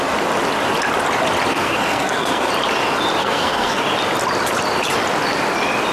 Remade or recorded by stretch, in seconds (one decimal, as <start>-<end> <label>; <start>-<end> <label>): 0.0-1.5 recorded; 1.5-2.5 remade; 2.5-3.2 recorded; 3.2-3.8 remade; 3.8-5.9 recorded